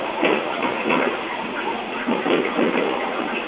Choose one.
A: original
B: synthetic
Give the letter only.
B